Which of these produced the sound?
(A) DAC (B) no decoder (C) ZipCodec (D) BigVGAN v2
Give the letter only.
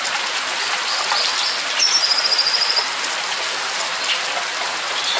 B